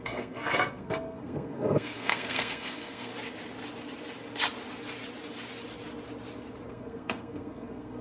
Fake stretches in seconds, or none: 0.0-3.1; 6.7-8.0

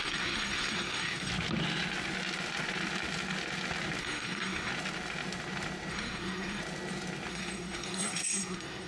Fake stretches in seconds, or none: 0.0-1.3; 4.0-4.7; 5.9-6.6; 7.3-8.9

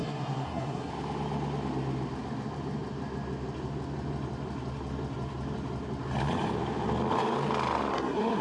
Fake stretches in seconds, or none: 0.0-0.9; 7.9-8.4

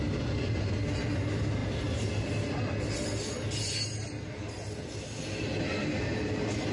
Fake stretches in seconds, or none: none

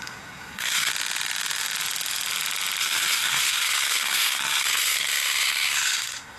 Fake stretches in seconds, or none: 0.0-0.9; 2.8-6.4